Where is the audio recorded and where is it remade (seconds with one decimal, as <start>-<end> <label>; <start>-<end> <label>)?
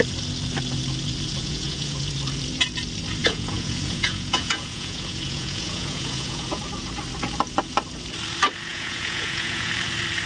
0.0-1.4 recorded; 1.4-2.0 remade; 2.0-3.2 recorded; 3.2-6.6 remade; 6.6-8.7 recorded; 8.7-9.7 remade; 9.7-10.3 recorded